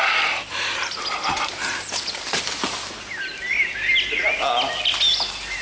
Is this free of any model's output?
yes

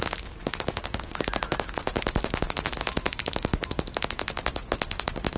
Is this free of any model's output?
yes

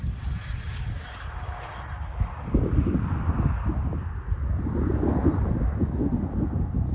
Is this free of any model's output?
yes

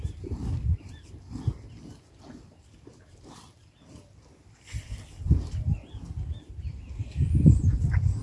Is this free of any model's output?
no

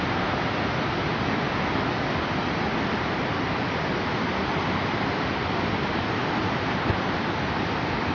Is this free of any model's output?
yes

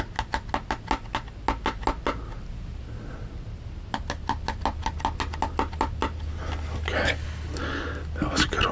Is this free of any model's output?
yes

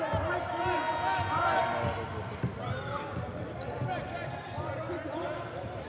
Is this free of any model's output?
yes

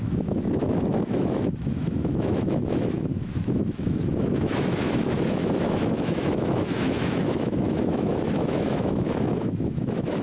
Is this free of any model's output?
no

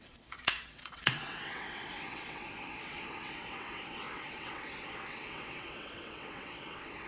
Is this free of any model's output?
no